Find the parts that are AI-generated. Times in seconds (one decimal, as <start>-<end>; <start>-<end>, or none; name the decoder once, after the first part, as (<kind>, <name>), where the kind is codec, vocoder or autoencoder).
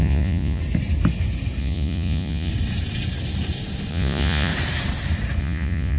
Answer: 0.0-0.6 (vocoder, Vocos); 1.6-2.5; 3.9-4.5; 5.4-6.0